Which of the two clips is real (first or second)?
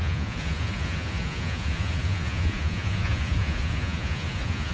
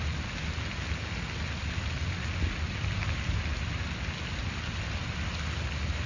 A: second